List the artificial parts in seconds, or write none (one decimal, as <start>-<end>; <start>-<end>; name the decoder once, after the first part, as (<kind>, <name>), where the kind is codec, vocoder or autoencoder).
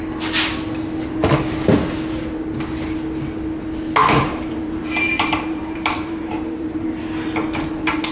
4.0-7.0 (vocoder, BigVGAN v2)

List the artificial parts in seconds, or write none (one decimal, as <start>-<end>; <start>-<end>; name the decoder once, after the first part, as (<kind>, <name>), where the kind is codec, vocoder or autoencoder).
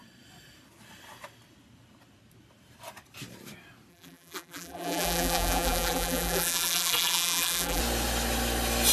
3.9-7.8 (vocoder, BigVGAN v2)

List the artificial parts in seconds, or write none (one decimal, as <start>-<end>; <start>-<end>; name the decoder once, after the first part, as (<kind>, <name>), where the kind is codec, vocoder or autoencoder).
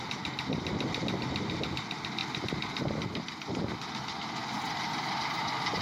none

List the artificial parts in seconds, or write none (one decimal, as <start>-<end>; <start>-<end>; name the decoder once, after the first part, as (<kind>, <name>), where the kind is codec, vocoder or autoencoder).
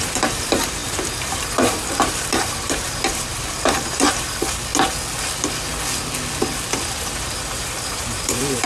0.0-4.7 (vocoder, BigVGAN v2); 7.2-8.7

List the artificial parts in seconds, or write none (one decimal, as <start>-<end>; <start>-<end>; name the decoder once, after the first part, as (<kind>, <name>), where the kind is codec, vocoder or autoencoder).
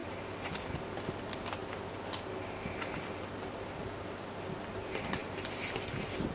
0.0-0.5 (vocoder, BigVGAN v2); 5.2-5.8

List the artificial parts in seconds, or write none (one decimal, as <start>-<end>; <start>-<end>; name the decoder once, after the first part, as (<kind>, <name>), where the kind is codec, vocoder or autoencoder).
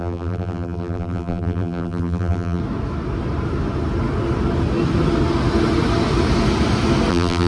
0.0-2.6 (vocoder, BigVGAN v2); 7.1-7.5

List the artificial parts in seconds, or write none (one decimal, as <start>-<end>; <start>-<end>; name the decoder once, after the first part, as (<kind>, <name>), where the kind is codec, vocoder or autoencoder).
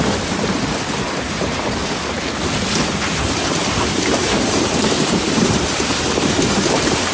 0.0-1.8 (vocoder, BigVGAN v2); 3.1-7.1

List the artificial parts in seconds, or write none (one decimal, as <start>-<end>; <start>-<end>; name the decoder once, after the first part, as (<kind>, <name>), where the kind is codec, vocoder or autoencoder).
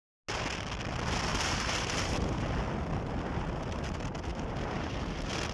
1.3-2.4 (vocoder, BigVGAN v2); 4.3-4.9